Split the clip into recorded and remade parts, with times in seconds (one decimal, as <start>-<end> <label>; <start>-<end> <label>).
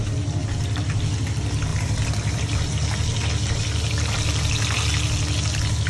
0.0-1.7 recorded; 1.7-2.7 remade; 2.7-5.9 recorded